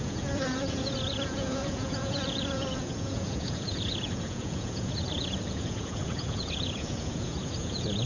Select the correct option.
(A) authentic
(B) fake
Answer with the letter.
B